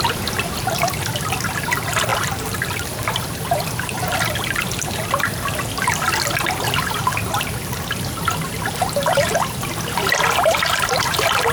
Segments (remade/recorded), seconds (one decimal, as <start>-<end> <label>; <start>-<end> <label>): 0.0-11.5 recorded